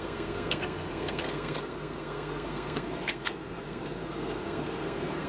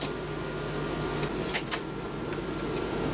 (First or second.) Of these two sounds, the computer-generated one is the first